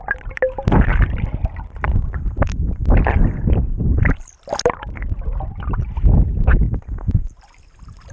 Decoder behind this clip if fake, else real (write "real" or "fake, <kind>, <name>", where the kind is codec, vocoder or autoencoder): real